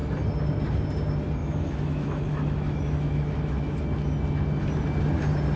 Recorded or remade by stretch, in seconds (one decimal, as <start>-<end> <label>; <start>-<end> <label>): 0.0-1.4 recorded; 1.4-3.8 remade; 3.8-5.6 recorded